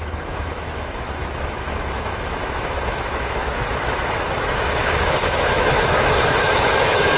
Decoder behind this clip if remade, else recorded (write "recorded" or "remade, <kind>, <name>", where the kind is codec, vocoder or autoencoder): remade, autoencoder, DAC-VAE